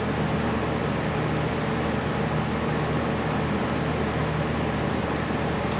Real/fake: real